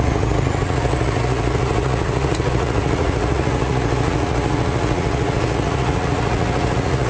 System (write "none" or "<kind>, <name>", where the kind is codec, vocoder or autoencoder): vocoder, Vocos